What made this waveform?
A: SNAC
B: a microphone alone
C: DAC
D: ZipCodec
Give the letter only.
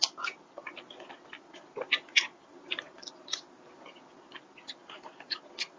B